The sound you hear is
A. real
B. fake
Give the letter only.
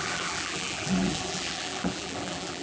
B